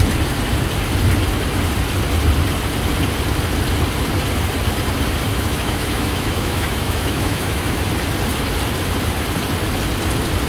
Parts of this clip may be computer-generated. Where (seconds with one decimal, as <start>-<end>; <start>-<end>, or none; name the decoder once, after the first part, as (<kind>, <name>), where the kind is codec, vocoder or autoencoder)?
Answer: 5.3-7.8 (autoencoder, DAC-VAE)